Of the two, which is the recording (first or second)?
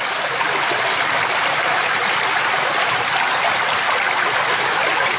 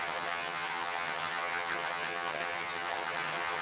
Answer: first